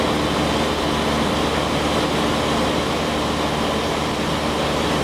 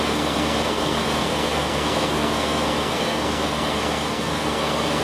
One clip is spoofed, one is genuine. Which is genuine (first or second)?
first